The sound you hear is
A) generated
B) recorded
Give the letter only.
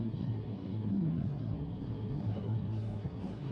A